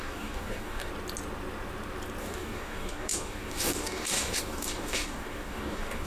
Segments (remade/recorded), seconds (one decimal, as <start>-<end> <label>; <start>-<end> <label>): 0.0-0.9 remade; 0.9-2.2 recorded; 2.2-6.1 remade